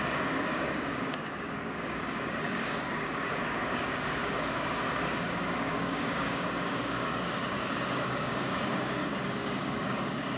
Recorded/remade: remade